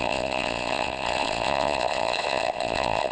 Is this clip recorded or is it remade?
remade